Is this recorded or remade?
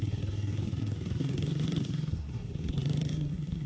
remade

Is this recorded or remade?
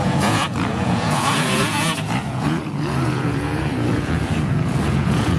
remade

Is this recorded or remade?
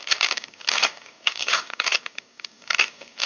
remade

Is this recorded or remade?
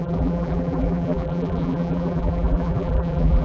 remade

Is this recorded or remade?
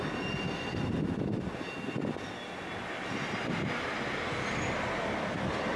recorded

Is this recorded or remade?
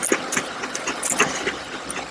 recorded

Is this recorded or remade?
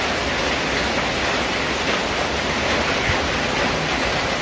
recorded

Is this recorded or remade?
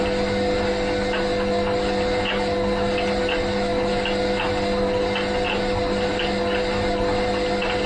recorded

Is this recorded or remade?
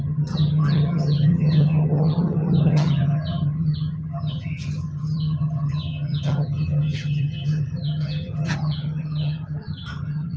remade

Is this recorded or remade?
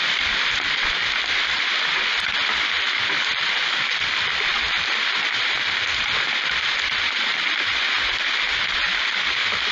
remade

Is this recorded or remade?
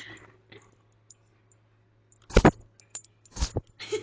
recorded